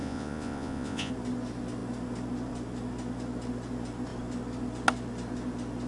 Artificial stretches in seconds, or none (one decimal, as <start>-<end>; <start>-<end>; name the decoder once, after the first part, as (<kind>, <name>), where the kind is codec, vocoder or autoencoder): 0.0-1.1 (vocoder, Vocos)